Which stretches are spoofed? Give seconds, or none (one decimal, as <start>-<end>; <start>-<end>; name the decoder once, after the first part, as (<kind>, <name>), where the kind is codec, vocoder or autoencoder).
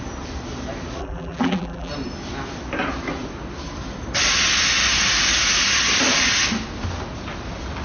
1.0-1.9 (vocoder, BigVGAN v2)